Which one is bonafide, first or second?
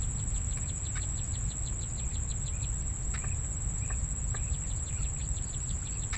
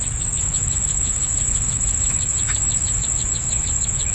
first